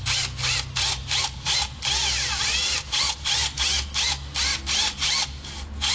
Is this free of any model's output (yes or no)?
yes